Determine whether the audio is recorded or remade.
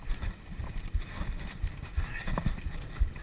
recorded